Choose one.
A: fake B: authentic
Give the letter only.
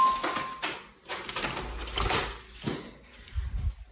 B